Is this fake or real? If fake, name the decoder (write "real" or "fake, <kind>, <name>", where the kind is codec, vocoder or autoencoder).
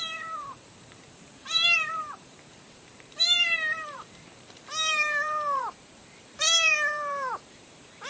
fake, vocoder, BigVGAN v2